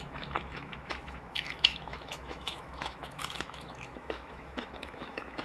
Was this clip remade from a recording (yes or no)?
yes